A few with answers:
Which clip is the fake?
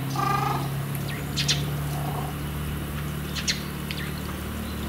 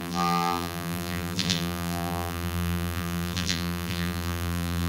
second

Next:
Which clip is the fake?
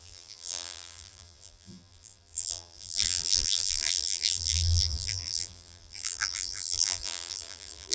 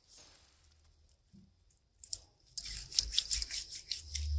first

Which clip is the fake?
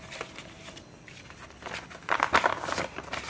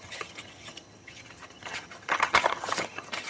second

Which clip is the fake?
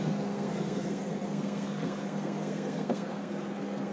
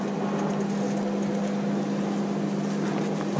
first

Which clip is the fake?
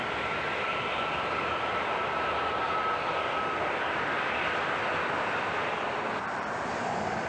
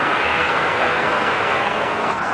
second